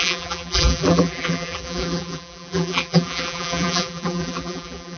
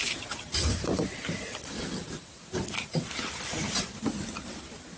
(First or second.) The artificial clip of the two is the first